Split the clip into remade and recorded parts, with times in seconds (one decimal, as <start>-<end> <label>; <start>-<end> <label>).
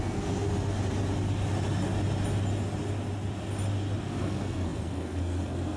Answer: 0.0-0.5 remade; 0.5-4.0 recorded; 4.0-5.8 remade